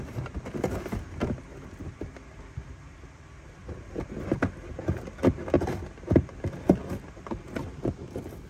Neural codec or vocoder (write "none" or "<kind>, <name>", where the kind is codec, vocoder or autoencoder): none